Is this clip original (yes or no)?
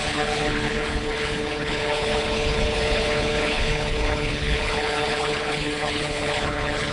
no